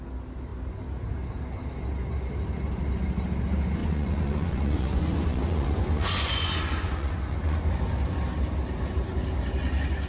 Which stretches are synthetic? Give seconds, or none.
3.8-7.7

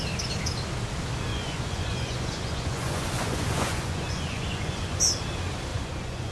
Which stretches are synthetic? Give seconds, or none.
1.3-5.0; 5.7-6.3